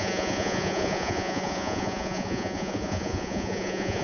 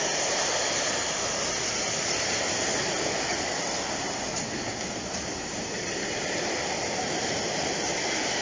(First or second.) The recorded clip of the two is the second